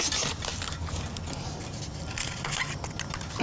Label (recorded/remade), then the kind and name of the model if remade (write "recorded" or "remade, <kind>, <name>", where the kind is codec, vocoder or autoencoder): recorded